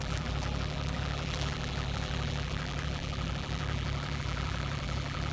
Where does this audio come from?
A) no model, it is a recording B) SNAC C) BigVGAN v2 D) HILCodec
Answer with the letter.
C